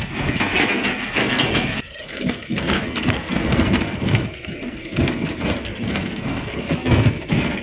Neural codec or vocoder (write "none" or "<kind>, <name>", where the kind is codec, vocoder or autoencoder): codec, SNAC